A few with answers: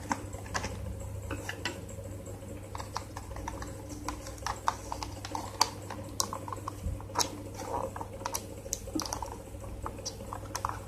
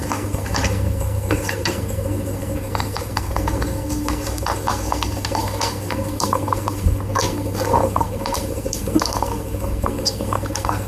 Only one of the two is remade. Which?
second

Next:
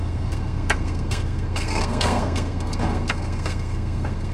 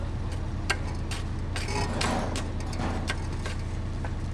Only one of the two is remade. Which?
first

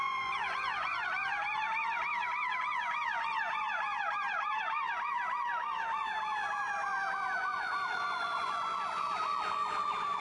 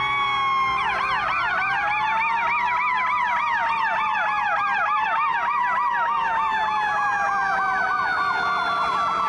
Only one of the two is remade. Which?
first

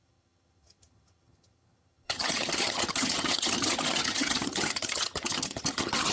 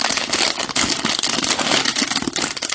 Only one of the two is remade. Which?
first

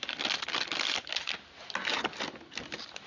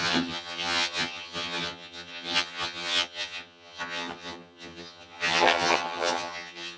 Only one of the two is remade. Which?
second